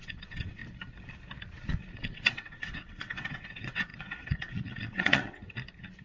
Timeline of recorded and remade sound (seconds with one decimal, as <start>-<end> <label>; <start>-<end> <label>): 0.0-0.6 remade; 0.6-1.9 recorded; 1.9-5.4 remade; 5.4-6.0 recorded